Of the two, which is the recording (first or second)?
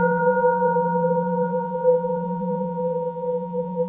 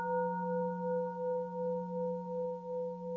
second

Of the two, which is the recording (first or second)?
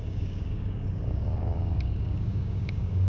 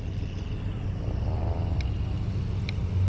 second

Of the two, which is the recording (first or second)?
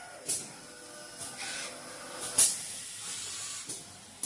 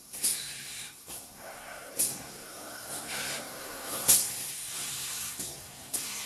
first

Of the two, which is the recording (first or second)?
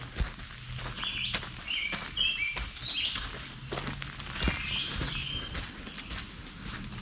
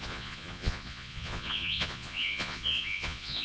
first